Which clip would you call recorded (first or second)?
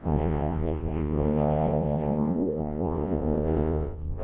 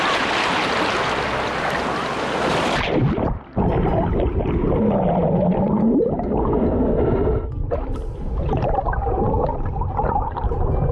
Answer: second